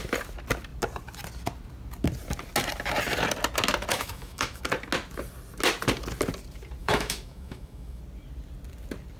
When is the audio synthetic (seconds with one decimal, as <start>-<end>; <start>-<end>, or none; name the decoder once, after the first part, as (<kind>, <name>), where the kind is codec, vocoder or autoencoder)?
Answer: 3.9-4.6 (autoencoder, DAC-VAE); 6.8-8.0